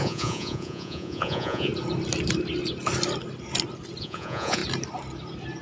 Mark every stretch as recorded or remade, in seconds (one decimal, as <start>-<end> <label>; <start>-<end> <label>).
0.0-1.7 remade; 1.7-4.0 recorded; 4.0-4.6 remade; 4.6-5.6 recorded